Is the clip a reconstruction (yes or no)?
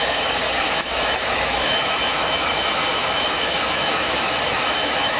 yes